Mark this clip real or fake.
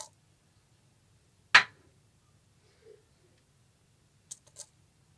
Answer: real